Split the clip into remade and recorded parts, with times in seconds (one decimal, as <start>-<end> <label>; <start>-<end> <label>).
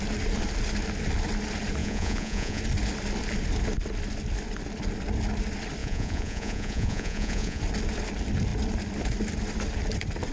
0.0-1.8 recorded; 1.8-2.6 remade; 2.6-5.8 recorded; 5.8-7.6 remade; 7.6-10.3 recorded